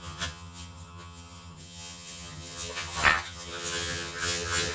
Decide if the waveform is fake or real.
fake